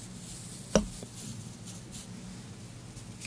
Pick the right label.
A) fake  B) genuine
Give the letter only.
B